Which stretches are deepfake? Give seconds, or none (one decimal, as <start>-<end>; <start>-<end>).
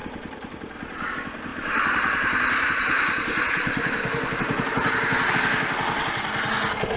0.0-1.1; 1.5-5.3